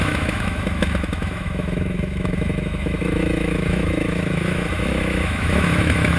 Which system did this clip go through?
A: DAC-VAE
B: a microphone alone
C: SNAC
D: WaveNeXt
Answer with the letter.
A